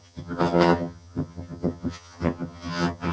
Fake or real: fake